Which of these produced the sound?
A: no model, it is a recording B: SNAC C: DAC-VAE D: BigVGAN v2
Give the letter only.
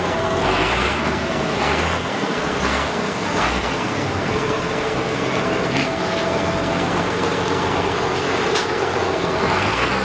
B